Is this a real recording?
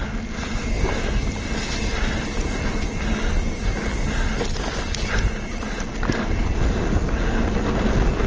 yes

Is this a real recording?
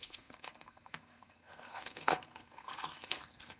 no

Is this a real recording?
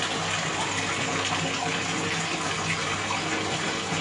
yes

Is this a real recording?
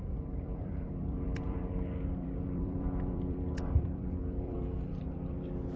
no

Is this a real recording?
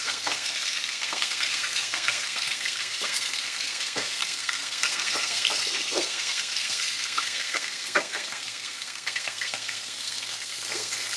no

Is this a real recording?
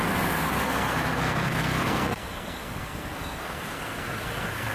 no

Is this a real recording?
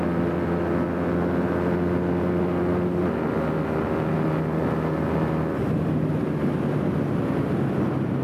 yes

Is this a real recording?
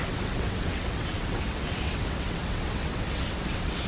no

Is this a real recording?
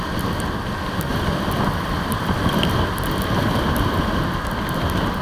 yes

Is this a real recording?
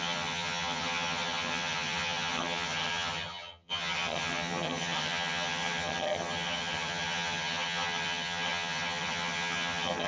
no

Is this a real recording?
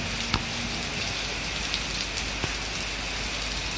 yes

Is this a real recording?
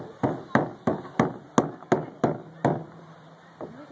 yes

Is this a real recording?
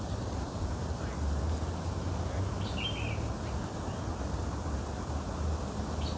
yes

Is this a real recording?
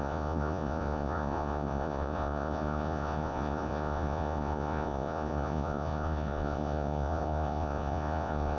no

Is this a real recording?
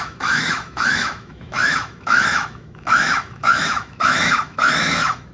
no